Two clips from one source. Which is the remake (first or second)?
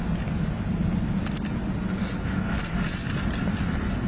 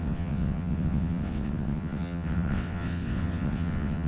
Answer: second